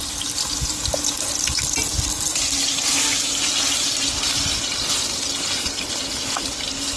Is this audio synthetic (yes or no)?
no